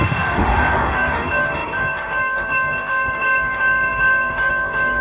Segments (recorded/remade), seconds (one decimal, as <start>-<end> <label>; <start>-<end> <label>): 0.0-5.0 remade